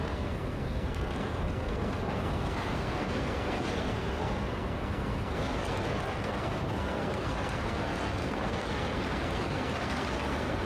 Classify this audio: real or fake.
fake